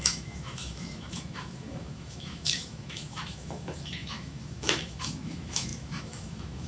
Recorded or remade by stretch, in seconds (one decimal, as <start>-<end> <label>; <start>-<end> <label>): 0.0-6.7 remade